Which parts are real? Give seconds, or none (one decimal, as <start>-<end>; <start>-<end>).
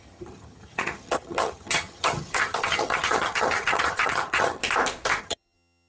4.6-5.2